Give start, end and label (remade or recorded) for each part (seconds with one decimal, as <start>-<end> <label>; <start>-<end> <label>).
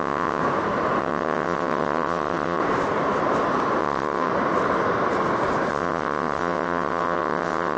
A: 0.0-0.4 remade; 0.4-1.0 recorded; 1.0-2.6 remade; 2.6-3.8 recorded; 3.8-4.3 remade; 4.3-5.7 recorded; 5.7-7.8 remade